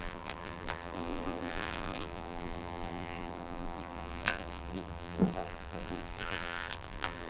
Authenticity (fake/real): fake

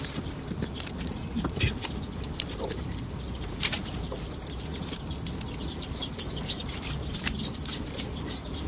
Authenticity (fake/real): fake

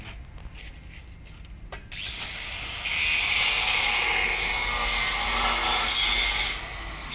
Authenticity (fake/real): real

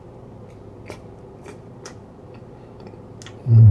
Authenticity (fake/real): real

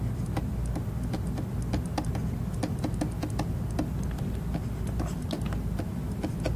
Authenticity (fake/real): real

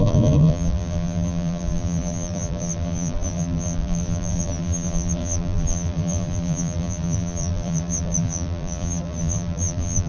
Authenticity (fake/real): fake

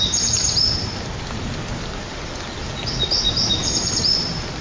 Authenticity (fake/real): fake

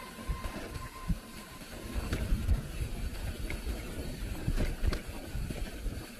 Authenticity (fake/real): fake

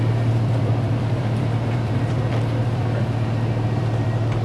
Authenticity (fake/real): fake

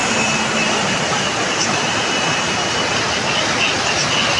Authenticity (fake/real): real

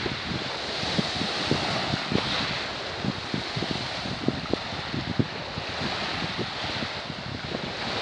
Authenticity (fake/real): real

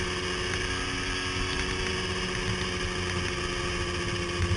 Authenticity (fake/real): real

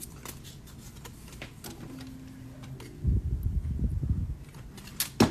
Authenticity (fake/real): real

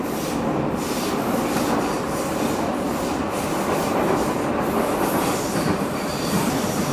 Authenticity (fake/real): real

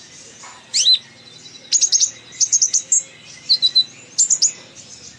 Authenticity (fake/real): real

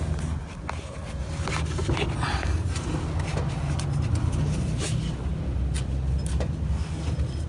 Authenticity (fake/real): real